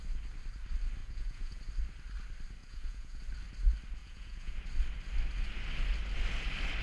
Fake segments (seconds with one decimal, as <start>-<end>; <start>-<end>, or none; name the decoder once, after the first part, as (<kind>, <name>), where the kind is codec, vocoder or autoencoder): 1.0-1.6 (vocoder, Vocos); 2.6-3.2; 4.0-4.6